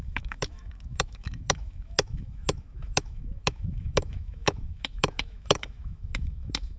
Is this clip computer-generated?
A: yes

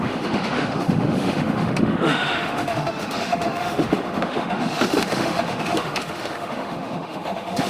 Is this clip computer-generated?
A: yes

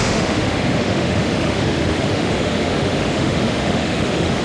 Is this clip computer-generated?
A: yes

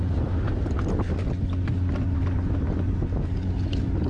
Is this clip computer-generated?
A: no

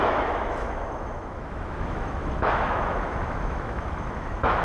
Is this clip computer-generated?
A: yes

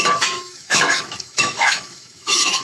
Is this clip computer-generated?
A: yes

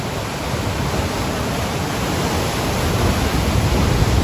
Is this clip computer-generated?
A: no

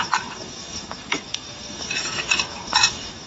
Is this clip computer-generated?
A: yes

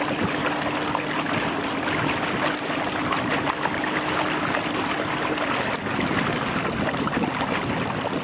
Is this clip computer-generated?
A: no